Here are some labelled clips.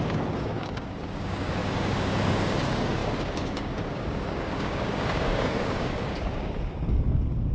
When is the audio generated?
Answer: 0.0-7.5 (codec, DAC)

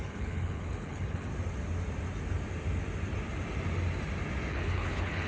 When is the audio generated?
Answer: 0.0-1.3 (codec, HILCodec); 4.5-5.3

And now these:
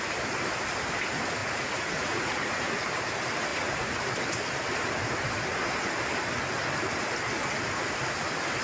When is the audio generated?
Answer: 1.4-2.7 (vocoder, Vocos); 3.5-4.0